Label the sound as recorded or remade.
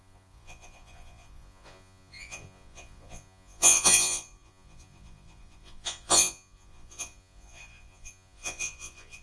remade